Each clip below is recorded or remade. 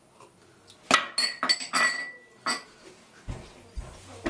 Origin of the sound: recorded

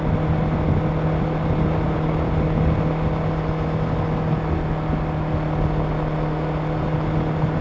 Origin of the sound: recorded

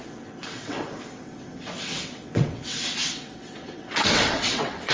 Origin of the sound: remade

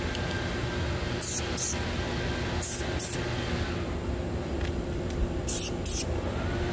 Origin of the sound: recorded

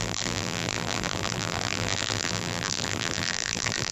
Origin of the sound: remade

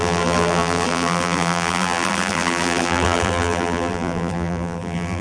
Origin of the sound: remade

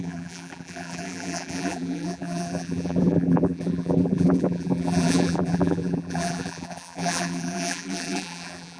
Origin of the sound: remade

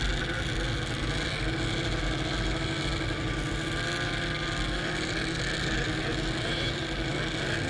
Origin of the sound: recorded